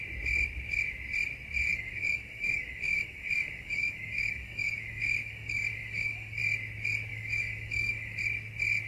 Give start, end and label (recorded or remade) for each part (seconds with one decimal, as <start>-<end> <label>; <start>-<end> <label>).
0.0-1.7 recorded; 1.7-6.4 remade; 6.4-7.1 recorded; 7.1-8.2 remade; 8.2-8.9 recorded